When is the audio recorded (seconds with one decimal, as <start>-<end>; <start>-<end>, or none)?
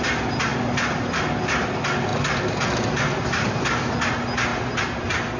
0.0-5.4